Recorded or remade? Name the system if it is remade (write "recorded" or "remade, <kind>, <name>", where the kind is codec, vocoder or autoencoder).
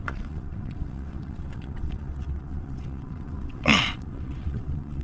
remade, vocoder, WaveNeXt